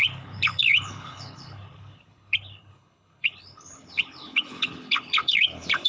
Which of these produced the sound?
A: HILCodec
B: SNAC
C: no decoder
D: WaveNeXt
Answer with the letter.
A